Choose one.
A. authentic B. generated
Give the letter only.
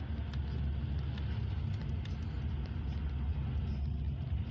A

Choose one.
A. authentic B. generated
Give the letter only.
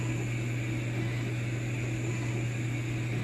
A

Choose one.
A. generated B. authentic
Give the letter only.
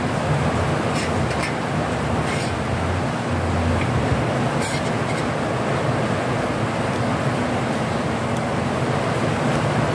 B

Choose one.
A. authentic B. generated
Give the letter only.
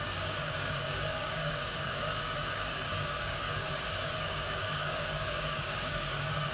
B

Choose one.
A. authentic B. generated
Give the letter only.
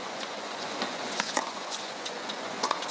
B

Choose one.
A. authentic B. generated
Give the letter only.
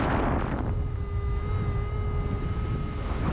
A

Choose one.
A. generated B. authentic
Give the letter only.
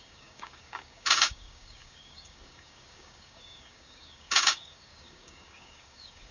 A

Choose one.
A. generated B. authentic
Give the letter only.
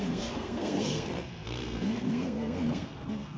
A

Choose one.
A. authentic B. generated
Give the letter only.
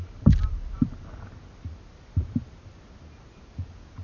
A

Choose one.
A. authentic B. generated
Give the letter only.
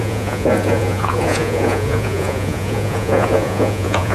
B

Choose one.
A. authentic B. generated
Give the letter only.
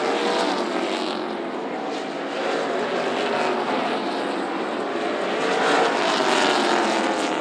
A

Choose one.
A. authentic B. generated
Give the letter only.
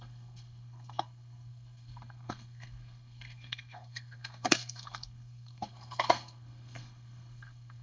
B